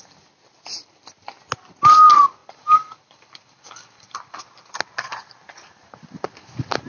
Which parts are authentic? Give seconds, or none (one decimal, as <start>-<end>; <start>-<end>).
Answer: 0.0-2.4; 4.4-6.9

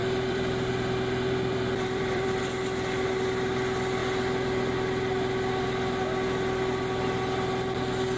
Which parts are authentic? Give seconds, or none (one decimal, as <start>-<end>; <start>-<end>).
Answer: 2.4-8.2

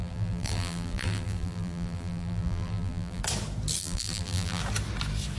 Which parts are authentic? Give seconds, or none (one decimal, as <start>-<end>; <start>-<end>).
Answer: 3.2-3.8; 4.6-5.4

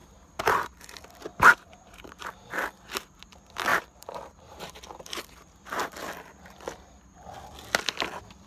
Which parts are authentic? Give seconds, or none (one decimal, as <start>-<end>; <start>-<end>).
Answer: 0.8-1.3; 2.5-3.7; 4.8-8.5

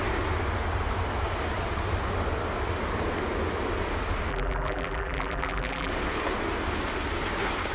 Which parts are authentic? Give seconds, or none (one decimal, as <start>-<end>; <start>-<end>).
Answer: 0.0-4.3; 5.9-7.7

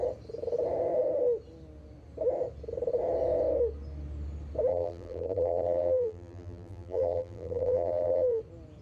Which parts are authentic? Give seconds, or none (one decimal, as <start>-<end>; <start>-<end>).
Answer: 0.0-4.7; 8.4-8.8